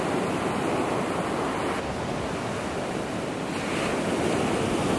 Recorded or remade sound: recorded